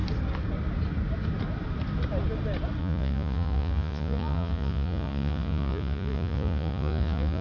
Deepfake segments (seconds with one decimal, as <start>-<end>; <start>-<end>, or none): 2.8-7.4